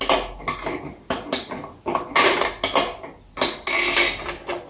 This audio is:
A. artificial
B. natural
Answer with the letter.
B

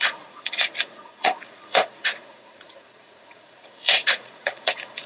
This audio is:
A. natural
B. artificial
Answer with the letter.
B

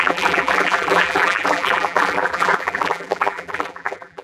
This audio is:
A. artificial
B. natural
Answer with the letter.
A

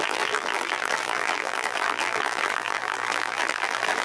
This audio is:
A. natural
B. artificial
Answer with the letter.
B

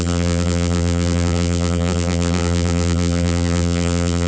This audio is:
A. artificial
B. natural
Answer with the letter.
A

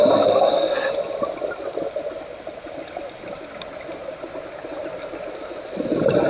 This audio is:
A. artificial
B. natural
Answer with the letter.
B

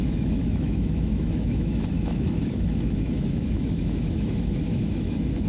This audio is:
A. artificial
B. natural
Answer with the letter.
A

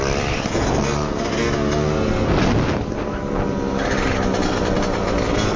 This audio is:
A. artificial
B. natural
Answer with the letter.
B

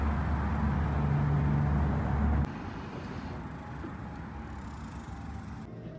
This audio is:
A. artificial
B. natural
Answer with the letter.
B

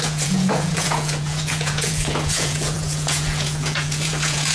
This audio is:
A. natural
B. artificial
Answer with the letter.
B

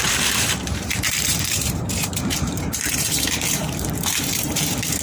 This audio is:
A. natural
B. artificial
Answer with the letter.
B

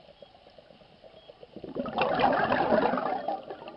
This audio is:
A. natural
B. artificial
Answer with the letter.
A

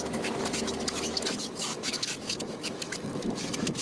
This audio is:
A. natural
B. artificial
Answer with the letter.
B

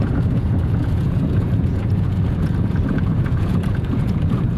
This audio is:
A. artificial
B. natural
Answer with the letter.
A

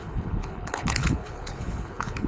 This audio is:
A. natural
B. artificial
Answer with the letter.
B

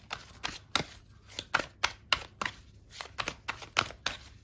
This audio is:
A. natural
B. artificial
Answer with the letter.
A